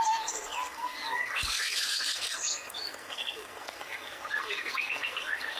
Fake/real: fake